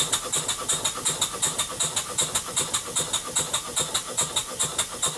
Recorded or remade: recorded